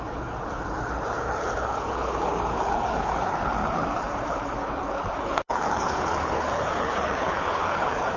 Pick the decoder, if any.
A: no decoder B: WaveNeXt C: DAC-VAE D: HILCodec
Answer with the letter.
D